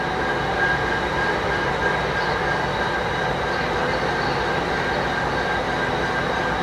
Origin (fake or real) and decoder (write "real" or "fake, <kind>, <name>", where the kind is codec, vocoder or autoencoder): real